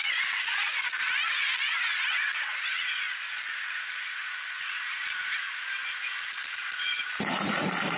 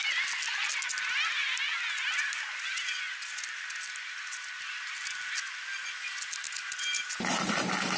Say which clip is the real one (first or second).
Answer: second